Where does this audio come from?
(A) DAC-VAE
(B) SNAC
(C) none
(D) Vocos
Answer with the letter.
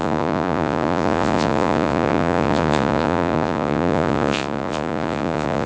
D